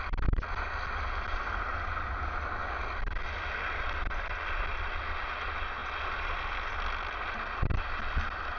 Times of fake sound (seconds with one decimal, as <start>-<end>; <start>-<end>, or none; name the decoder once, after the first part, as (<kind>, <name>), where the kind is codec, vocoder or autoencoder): none